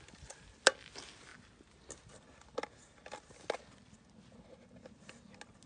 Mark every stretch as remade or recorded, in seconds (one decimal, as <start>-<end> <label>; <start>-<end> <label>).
0.0-5.7 recorded